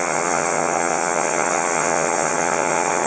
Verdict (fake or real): fake